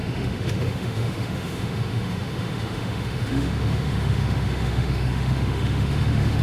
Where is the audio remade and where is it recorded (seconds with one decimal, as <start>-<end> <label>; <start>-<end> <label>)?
0.0-6.4 remade